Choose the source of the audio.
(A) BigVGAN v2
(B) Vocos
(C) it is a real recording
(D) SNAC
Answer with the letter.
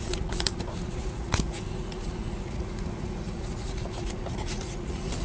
B